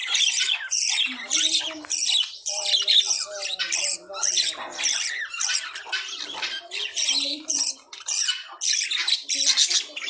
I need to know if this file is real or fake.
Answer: real